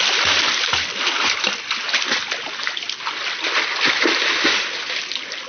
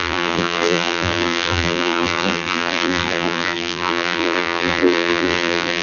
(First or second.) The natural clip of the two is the first